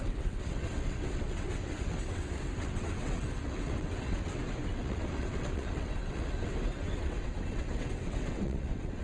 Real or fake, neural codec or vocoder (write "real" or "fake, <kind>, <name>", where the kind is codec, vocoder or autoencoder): fake, vocoder, WaveNeXt